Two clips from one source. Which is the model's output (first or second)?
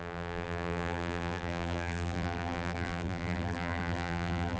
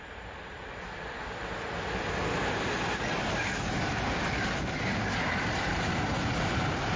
first